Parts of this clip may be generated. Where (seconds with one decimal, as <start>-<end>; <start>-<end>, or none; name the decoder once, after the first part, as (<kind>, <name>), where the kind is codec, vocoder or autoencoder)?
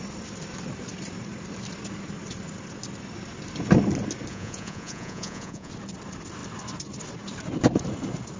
4.3-5.7 (vocoder, Vocos)